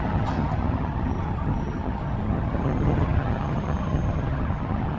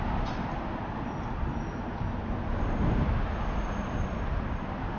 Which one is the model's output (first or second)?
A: first